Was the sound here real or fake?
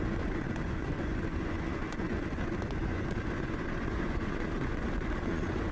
fake